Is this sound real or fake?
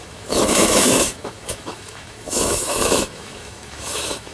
fake